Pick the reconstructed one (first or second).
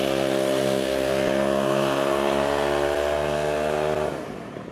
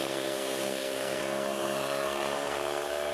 second